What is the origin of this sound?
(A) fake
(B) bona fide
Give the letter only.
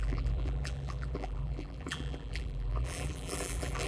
A